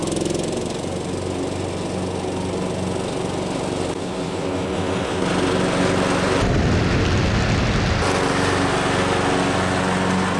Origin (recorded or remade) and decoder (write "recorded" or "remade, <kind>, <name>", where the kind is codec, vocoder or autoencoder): recorded